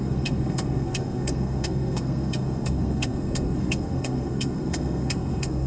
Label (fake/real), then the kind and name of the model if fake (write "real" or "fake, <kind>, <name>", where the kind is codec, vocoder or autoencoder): fake, codec, SNAC